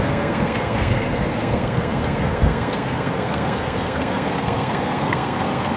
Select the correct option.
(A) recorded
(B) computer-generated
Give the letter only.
B